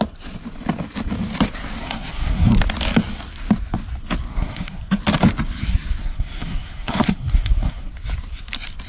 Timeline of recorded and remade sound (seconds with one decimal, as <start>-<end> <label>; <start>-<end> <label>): 0.0-1.8 recorded; 1.8-2.5 remade; 2.5-4.3 recorded; 4.3-4.8 remade; 4.8-6.0 recorded; 6.0-7.9 remade; 7.9-8.9 recorded

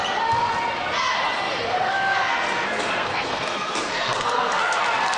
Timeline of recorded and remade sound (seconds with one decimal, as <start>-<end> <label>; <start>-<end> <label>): 0.0-1.7 recorded; 1.7-4.8 remade; 4.8-5.2 recorded

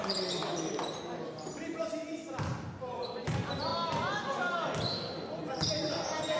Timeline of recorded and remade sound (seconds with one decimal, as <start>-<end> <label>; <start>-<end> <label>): 0.0-0.4 remade; 0.4-2.8 recorded; 2.8-3.7 remade; 3.7-5.7 recorded; 5.7-6.4 remade

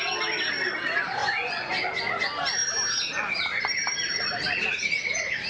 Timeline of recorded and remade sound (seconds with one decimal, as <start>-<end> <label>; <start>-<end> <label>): 0.0-1.2 recorded; 1.2-1.7 remade; 1.7-5.5 recorded

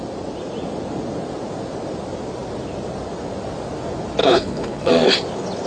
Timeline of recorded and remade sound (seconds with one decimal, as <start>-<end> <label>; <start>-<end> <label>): 0.0-4.2 recorded; 4.2-4.9 remade; 4.9-5.7 recorded

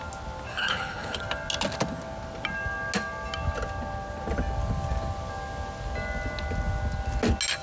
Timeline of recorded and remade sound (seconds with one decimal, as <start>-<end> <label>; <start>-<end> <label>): 0.0-0.5 recorded; 0.5-1.2 remade; 1.2-7.6 recorded

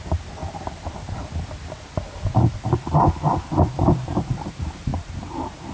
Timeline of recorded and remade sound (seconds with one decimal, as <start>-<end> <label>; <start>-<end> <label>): 0.0-0.4 remade; 0.4-3.5 recorded; 3.5-5.7 remade

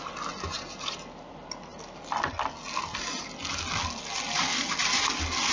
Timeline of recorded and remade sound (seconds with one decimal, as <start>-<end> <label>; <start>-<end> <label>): 0.0-5.5 recorded